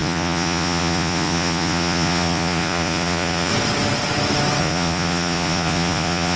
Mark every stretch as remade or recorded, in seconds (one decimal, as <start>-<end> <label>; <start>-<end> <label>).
0.0-3.5 remade; 3.5-4.6 recorded; 4.6-6.4 remade